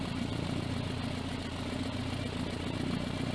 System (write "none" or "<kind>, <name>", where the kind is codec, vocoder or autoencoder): none